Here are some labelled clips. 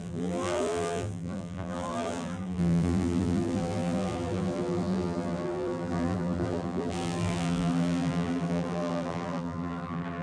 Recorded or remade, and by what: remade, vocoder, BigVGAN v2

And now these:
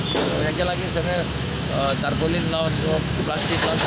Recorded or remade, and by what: remade, autoencoder, DAC-VAE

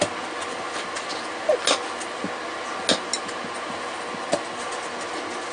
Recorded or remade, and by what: recorded